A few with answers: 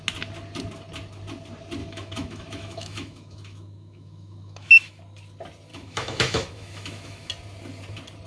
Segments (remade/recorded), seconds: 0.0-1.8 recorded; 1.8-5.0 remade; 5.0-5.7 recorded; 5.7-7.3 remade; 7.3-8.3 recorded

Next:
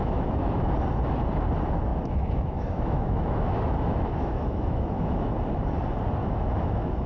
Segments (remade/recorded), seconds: 0.0-0.7 remade; 0.7-1.9 recorded; 1.9-5.3 remade; 5.3-6.2 recorded; 6.2-7.1 remade

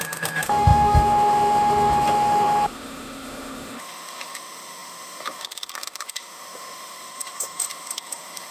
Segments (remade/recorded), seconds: 0.0-8.5 remade

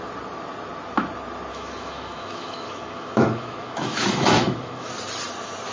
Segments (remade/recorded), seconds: 0.0-1.5 recorded; 1.5-4.9 remade; 4.9-5.7 recorded

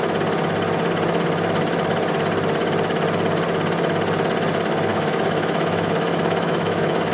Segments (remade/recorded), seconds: 0.0-4.9 recorded; 4.9-7.1 remade

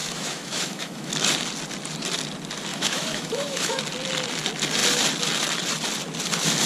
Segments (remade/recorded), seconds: 0.0-1.1 remade; 1.1-2.7 recorded; 2.7-3.8 remade; 3.8-6.7 recorded

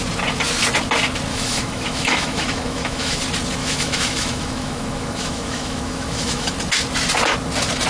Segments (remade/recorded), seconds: 0.0-1.3 recorded; 1.3-3.2 remade; 3.2-3.6 recorded; 3.6-6.5 remade; 6.5-7.9 recorded